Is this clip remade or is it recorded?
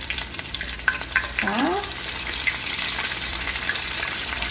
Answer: remade